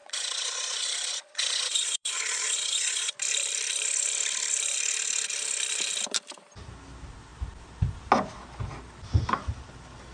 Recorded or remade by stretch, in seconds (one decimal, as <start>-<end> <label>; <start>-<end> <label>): 0.0-3.2 remade; 3.2-10.1 recorded